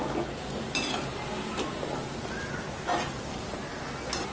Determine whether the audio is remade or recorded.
recorded